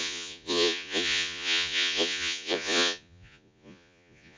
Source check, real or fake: fake